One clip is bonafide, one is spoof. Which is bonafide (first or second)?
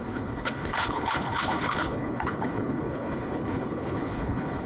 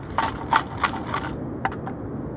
second